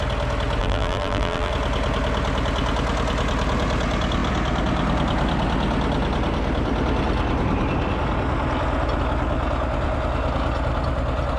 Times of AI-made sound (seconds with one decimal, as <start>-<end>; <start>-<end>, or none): 0.6-1.5